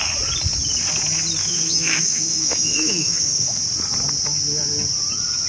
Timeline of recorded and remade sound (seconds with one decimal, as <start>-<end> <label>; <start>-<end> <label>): 0.0-1.4 recorded; 1.4-3.6 remade; 3.6-5.5 recorded